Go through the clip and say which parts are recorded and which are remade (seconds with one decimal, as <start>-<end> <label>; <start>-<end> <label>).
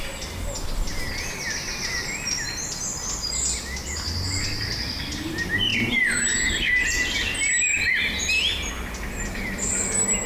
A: 0.0-10.3 recorded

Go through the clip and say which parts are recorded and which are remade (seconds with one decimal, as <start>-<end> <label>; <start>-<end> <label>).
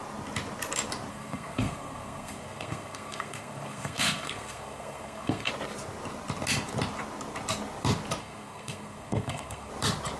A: 0.0-1.1 recorded; 1.1-5.5 remade; 5.5-8.2 recorded; 8.2-9.7 remade; 9.7-10.2 recorded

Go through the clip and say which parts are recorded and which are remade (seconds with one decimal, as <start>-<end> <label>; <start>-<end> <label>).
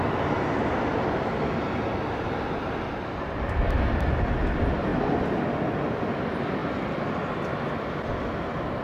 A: 0.0-8.8 recorded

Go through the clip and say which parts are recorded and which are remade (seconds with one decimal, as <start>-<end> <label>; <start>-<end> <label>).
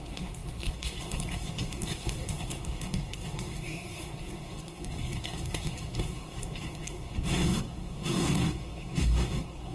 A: 0.0-9.7 remade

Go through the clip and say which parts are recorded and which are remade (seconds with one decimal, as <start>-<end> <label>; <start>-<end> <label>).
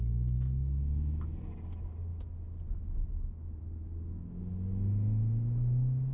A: 0.0-6.1 recorded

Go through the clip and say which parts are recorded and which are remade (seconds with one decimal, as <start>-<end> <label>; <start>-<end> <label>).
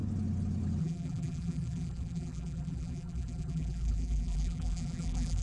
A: 0.0-0.8 recorded; 0.8-5.4 remade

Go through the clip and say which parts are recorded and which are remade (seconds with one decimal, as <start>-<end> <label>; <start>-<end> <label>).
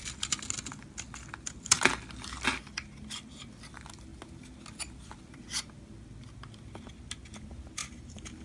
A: 0.0-7.8 recorded; 7.8-8.4 remade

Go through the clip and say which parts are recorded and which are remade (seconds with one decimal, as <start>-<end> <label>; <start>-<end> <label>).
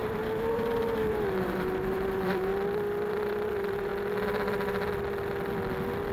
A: 0.0-2.5 remade; 2.5-3.1 recorded; 3.1-3.9 remade; 3.9-6.1 recorded